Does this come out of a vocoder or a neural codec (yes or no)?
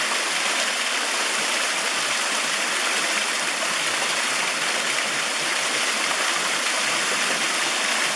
no